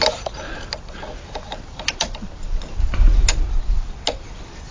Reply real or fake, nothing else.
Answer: real